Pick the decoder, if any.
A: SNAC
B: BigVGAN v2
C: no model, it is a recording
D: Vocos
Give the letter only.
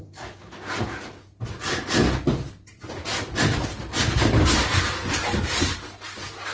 C